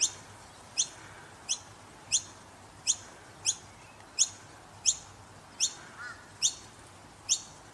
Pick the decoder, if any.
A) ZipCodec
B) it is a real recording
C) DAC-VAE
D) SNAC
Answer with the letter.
B